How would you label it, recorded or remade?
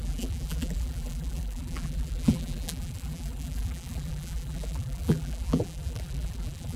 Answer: remade